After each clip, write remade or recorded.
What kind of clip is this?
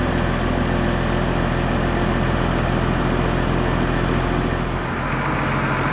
recorded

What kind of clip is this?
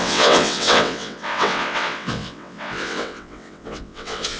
remade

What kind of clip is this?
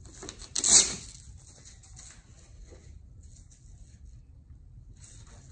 recorded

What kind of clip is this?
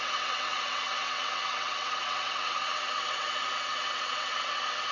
remade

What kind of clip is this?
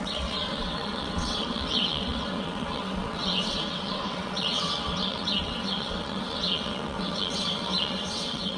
remade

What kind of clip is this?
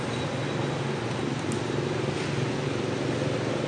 recorded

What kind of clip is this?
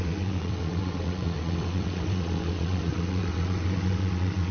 remade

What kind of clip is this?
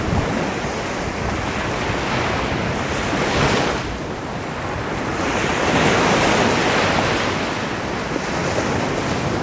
recorded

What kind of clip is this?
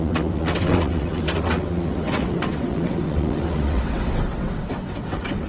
remade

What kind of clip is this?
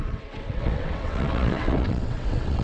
remade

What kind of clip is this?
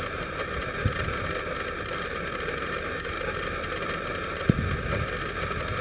recorded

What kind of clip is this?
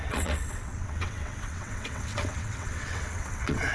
remade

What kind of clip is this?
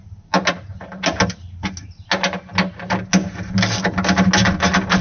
recorded